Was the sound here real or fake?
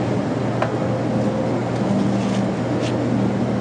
real